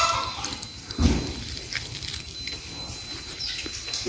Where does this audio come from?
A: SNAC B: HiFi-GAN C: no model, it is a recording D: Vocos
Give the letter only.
C